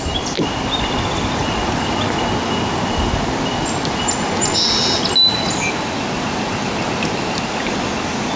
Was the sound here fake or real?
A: real